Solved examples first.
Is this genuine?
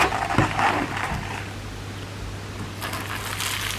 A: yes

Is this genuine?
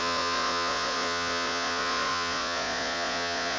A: no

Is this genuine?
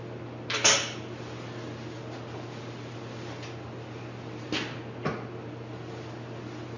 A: yes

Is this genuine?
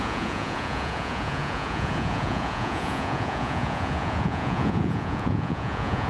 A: no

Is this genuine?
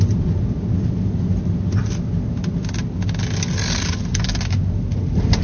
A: yes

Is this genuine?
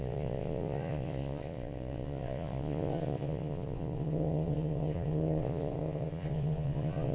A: no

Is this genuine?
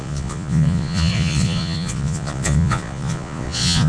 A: no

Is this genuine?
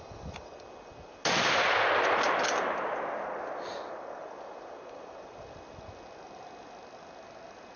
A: yes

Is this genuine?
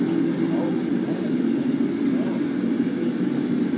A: yes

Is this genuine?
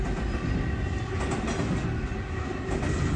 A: yes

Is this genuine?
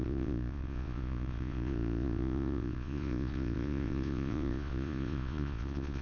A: no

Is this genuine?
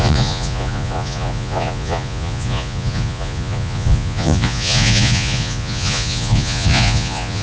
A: no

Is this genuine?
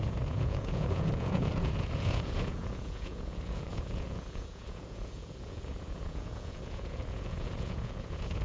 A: no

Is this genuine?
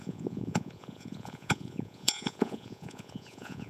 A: no